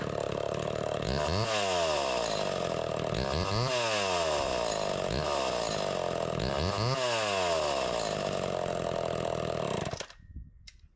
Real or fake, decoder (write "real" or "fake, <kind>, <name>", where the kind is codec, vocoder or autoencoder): real